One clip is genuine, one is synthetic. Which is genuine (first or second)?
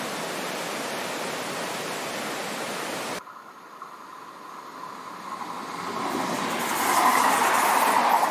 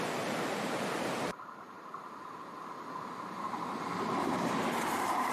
first